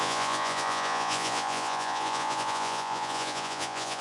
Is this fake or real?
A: fake